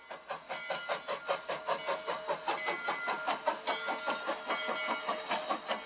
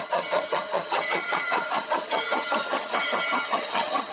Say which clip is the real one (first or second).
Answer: first